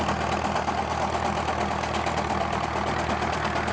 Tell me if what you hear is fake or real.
real